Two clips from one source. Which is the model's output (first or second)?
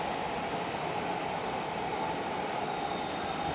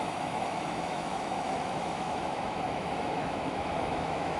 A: second